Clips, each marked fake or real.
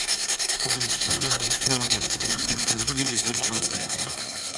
fake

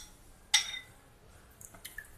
real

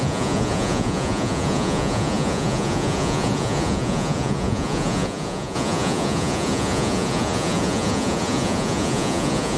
fake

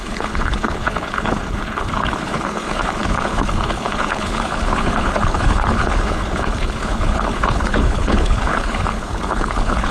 fake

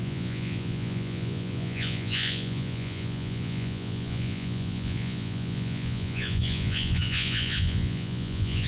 fake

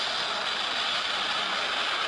real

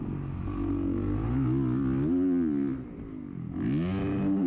real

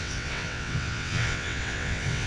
fake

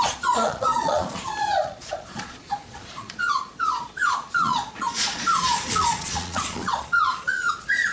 fake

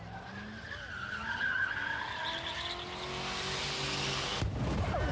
real